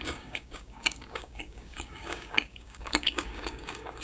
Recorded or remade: remade